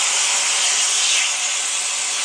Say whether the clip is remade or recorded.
recorded